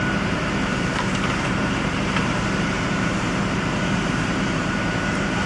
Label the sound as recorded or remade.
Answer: remade